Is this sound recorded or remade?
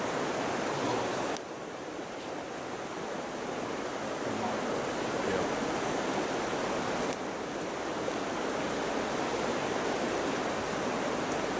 recorded